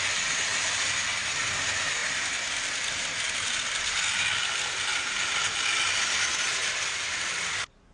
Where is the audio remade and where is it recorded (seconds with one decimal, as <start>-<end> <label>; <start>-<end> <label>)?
0.0-7.9 recorded